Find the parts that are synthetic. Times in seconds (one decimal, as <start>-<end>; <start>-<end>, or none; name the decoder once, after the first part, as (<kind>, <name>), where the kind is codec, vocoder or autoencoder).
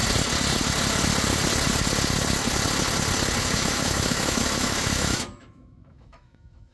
3.4-6.7 (autoencoder, DAC-VAE)